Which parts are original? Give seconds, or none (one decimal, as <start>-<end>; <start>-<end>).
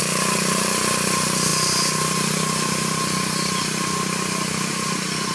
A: 0.0-5.3